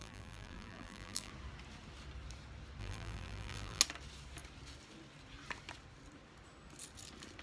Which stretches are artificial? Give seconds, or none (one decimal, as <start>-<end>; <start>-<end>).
0.0-1.3; 2.8-3.8